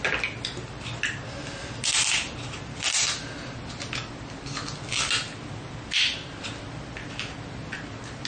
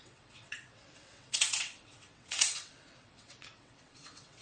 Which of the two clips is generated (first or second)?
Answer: second